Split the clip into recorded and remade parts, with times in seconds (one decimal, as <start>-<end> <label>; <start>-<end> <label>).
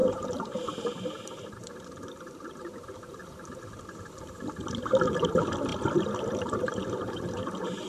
0.0-3.2 remade; 3.2-3.8 recorded; 3.8-5.7 remade; 5.7-6.4 recorded; 6.4-7.9 remade